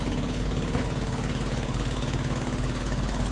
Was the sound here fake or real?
fake